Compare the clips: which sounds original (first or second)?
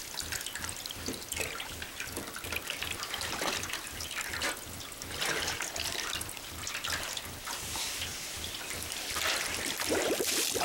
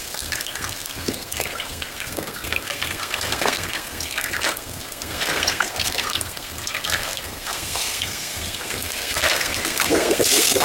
first